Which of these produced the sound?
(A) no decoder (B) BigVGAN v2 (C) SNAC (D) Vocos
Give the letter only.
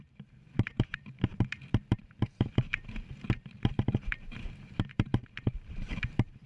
B